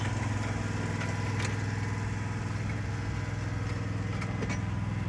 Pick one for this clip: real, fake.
real